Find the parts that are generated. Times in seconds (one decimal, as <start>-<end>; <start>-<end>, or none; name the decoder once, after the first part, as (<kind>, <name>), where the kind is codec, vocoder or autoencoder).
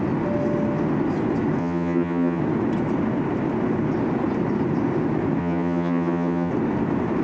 1.6-2.4 (vocoder, HiFi-GAN); 5.4-6.5